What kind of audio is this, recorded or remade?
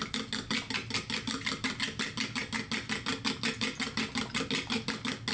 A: recorded